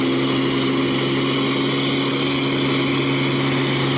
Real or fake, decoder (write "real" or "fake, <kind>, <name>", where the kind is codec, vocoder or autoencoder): real